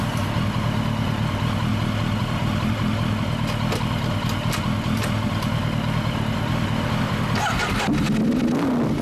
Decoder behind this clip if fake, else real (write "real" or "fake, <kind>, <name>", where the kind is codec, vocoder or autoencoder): real